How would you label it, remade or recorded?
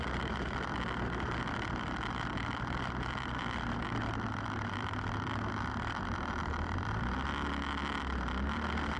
remade